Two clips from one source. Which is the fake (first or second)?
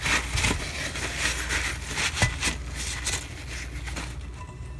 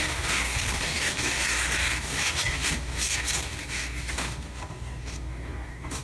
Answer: second